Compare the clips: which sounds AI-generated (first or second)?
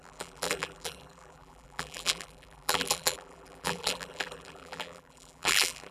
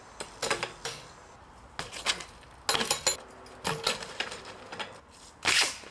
first